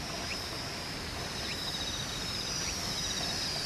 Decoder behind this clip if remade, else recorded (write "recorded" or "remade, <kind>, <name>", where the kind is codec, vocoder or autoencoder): recorded